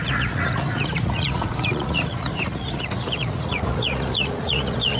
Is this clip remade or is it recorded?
remade